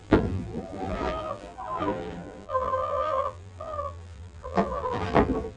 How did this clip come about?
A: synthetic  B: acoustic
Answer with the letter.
A